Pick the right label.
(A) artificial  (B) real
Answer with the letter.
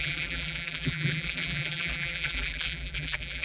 A